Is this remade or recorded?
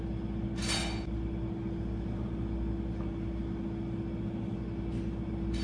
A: recorded